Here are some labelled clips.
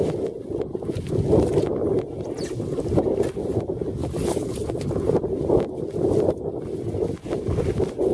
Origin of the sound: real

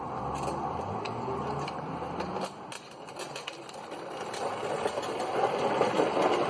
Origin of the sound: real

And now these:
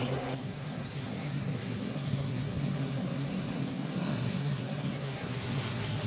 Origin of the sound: fake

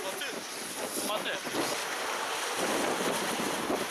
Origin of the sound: real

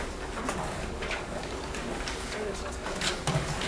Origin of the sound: fake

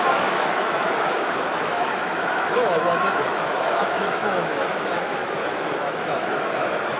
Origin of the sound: fake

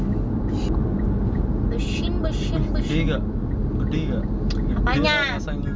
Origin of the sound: real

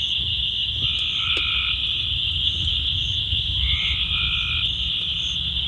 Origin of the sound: real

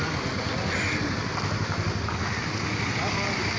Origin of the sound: real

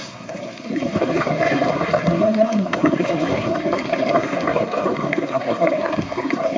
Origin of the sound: fake